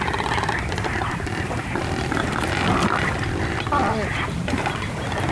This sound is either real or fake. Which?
fake